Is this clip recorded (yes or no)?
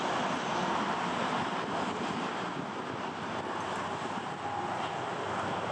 yes